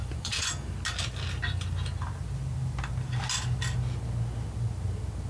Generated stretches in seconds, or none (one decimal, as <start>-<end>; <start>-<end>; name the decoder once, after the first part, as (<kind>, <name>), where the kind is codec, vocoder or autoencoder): 0.0-0.5 (vocoder, Vocos)

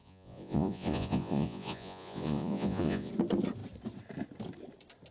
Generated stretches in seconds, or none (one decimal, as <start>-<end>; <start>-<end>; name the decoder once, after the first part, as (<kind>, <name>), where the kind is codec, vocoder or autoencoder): 0.0-3.1 (vocoder, Vocos)